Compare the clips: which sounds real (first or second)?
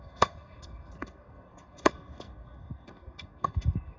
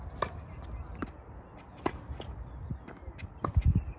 second